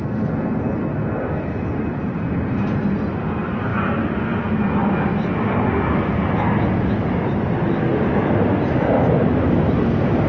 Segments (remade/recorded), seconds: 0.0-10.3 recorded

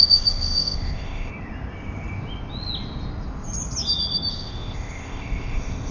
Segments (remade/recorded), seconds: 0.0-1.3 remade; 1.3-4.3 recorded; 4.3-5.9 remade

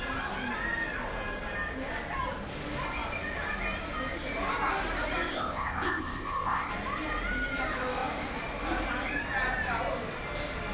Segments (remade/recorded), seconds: 0.0-5.3 recorded; 5.3-6.7 remade; 6.7-10.7 recorded